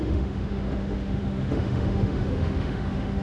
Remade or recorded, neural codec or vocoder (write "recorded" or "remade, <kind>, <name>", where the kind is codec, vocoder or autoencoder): remade, autoencoder, DAC-VAE